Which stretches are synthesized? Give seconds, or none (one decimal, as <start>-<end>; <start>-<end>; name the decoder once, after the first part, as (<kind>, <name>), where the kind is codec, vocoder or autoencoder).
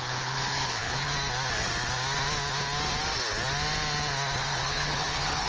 0.0-1.1 (codec, HILCodec); 4.4-5.5